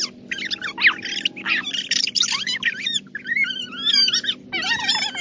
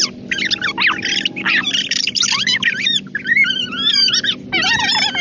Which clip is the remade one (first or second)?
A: second